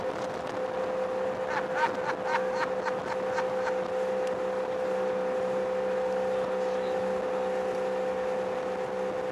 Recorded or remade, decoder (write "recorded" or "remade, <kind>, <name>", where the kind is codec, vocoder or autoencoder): recorded